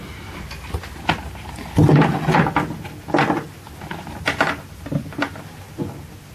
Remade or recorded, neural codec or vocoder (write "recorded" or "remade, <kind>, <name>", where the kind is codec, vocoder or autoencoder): recorded